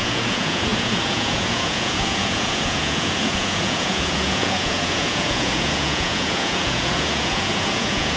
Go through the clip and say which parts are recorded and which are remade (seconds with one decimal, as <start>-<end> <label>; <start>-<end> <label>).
0.0-8.2 remade

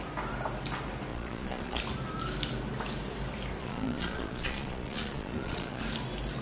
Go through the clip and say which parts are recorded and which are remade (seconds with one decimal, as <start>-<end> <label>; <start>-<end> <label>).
0.0-1.1 recorded; 1.1-1.8 remade; 1.8-3.6 recorded; 3.6-5.8 remade; 5.8-6.4 recorded

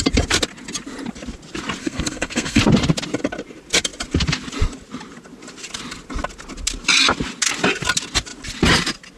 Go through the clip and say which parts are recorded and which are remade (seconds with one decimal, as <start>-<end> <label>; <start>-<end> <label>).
0.0-1.8 recorded; 1.8-2.6 remade; 2.6-9.2 recorded

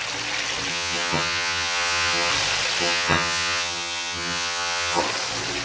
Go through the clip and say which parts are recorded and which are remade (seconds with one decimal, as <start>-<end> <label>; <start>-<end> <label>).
0.0-0.7 recorded; 0.7-2.3 remade; 2.3-2.8 recorded; 2.8-5.0 remade; 5.0-5.6 recorded

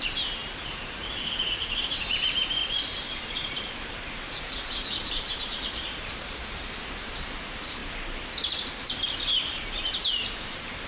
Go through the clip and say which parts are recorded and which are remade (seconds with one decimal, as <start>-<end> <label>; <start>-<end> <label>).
0.0-7.8 remade; 7.8-9.3 recorded; 9.3-10.9 remade

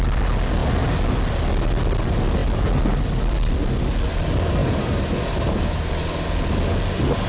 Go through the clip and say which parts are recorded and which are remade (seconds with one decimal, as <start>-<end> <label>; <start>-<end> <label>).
0.0-4.6 recorded; 4.6-5.9 remade; 5.9-7.3 recorded

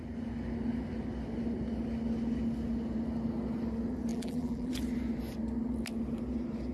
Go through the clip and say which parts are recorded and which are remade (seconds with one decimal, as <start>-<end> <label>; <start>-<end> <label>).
0.0-4.1 recorded; 4.1-4.7 remade; 4.7-6.7 recorded

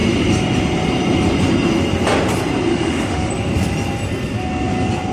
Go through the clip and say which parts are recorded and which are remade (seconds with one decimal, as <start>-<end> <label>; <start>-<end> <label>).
0.0-2.7 recorded; 2.7-3.3 remade; 3.3-5.1 recorded